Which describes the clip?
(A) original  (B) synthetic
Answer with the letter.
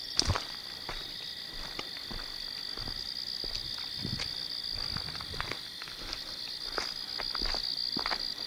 A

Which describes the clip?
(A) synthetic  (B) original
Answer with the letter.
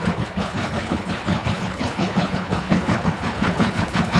A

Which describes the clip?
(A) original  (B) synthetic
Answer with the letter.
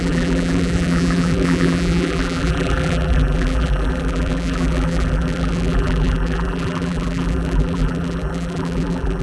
B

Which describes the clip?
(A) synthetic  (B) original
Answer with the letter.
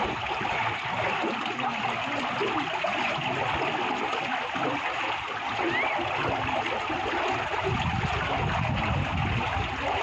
B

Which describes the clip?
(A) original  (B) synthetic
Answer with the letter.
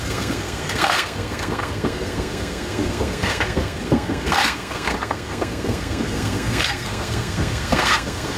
B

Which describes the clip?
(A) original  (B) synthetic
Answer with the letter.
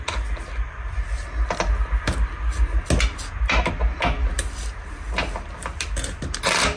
A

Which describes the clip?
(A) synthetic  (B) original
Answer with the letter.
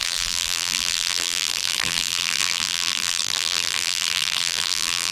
A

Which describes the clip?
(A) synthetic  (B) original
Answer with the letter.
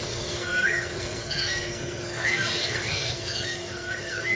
A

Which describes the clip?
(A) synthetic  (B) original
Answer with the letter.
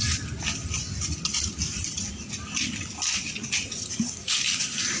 B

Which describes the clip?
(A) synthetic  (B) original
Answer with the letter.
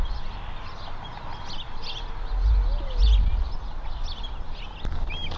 B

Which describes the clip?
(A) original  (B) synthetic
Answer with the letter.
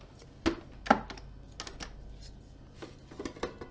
A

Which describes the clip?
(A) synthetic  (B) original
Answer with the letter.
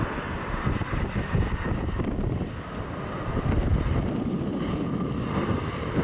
B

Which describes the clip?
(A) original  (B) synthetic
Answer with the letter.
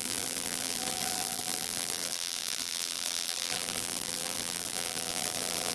B